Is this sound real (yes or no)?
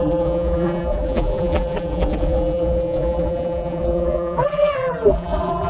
no